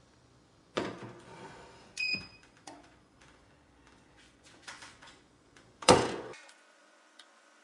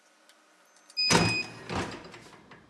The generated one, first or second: first